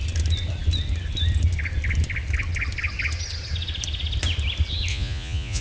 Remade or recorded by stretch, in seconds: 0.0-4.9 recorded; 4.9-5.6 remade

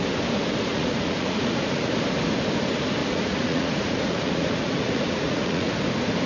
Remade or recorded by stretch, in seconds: 0.0-0.7 recorded; 0.7-1.9 remade; 1.9-3.0 recorded; 3.0-5.7 remade; 5.7-6.3 recorded

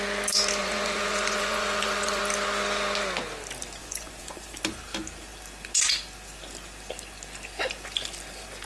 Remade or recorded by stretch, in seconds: 0.0-0.6 recorded; 0.6-2.2 remade; 2.2-3.8 recorded; 3.8-4.6 remade; 4.6-8.7 recorded